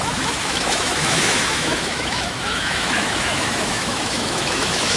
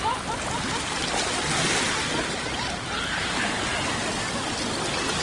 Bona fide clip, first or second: second